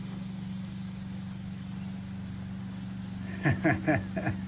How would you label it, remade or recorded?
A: recorded